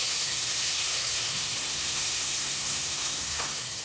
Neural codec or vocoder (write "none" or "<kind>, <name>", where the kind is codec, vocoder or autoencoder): codec, SNAC